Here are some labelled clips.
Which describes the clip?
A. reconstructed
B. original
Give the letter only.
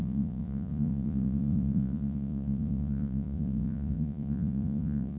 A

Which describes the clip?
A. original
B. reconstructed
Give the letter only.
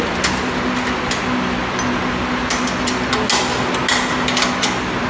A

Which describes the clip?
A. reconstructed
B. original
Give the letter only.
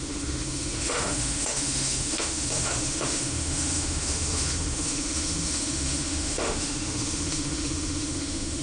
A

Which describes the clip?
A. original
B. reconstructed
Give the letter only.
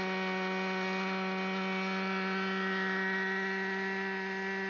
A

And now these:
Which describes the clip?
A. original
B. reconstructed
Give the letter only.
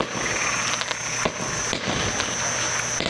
A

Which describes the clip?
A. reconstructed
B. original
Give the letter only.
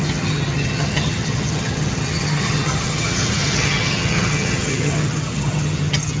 A